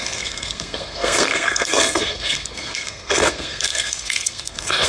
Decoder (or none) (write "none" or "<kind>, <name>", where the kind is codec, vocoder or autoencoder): codec, SNAC